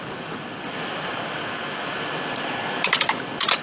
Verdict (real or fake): real